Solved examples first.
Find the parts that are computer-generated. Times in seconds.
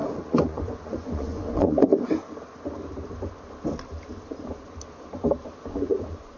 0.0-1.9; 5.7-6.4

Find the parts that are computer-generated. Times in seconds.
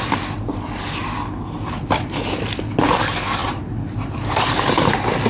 none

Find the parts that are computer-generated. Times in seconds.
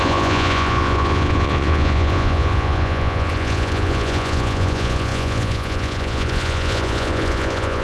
0.0-7.8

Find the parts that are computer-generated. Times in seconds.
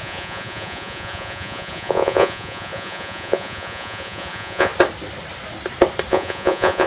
0.0-4.7; 6.1-6.9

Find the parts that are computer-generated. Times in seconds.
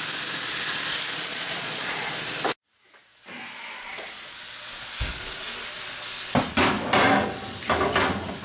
1.3-2.1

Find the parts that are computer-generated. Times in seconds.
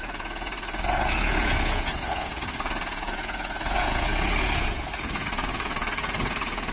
0.0-6.7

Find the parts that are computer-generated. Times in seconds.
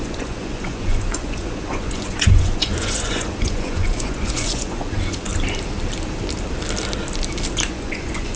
0.0-5.3; 7.5-8.4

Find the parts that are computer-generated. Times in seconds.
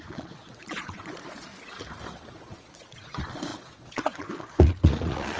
0.0-1.5; 2.3-5.4